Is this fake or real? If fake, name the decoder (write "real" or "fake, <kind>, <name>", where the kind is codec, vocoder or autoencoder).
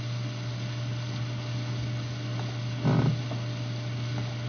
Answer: real